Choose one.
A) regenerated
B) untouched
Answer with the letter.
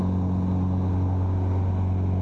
B